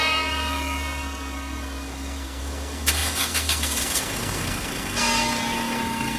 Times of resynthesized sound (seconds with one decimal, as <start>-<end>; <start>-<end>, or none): 0.0-6.2